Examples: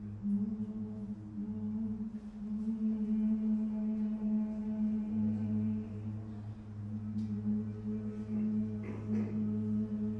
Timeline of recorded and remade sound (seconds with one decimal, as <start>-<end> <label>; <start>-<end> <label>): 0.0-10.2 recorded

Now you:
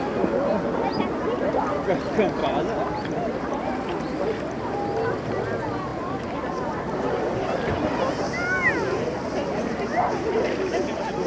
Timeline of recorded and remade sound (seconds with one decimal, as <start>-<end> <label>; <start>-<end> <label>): 0.0-2.4 recorded; 2.4-4.2 remade; 4.2-5.9 recorded; 5.9-6.5 remade; 6.5-11.3 recorded

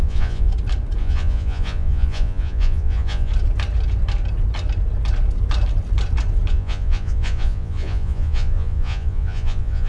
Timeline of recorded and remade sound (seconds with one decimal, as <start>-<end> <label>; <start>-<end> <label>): 0.0-0.5 remade; 0.5-1.0 recorded; 1.0-3.3 remade; 3.3-6.5 recorded; 6.5-9.9 remade

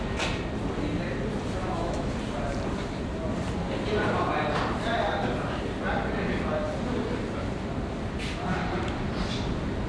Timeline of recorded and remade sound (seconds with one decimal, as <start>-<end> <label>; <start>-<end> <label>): 0.0-1.6 recorded; 1.6-2.1 remade; 2.1-9.9 recorded

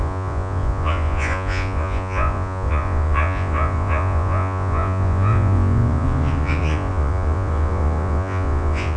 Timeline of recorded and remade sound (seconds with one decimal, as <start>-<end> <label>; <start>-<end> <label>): 0.0-9.0 remade

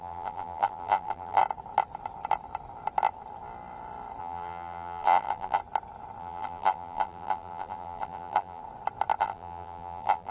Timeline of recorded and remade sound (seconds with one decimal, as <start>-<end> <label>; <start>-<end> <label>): 0.0-1.4 remade; 1.4-4.2 recorded; 4.2-5.6 remade; 5.6-6.2 recorded; 6.2-8.6 remade; 8.6-9.2 recorded; 9.2-10.3 remade

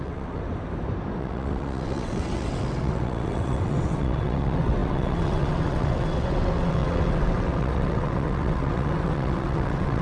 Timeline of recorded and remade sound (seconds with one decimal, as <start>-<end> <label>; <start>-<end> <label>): 0.0-0.4 remade; 0.4-1.2 recorded; 1.2-10.0 remade

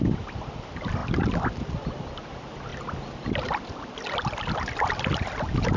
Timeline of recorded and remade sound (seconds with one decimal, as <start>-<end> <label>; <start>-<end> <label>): 0.0-5.8 recorded